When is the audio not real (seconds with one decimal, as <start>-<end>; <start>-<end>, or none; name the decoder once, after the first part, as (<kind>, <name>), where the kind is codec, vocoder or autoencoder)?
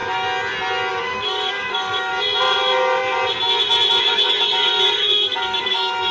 0.9-2.1 (codec, DAC); 4.0-6.1